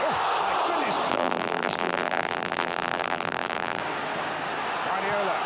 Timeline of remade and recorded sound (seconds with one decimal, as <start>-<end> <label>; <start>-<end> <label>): 0.0-1.1 recorded; 1.1-3.8 remade; 3.8-5.5 recorded